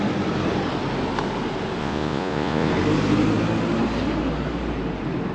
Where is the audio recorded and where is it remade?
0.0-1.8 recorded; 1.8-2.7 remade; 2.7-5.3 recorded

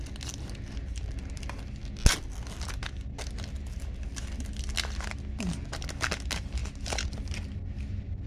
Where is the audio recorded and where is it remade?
0.0-8.3 recorded

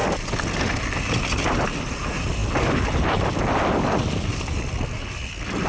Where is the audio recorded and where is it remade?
0.0-5.7 recorded

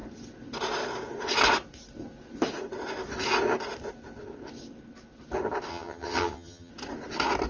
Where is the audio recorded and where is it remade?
0.0-5.7 recorded; 5.7-6.7 remade; 6.7-7.5 recorded

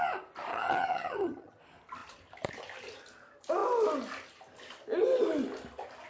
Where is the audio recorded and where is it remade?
0.0-0.5 recorded; 0.5-1.6 remade; 1.6-6.1 recorded

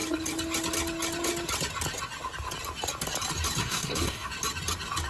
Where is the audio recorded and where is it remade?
0.0-3.6 recorded; 3.6-4.3 remade; 4.3-5.1 recorded